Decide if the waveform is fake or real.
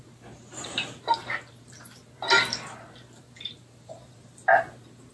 real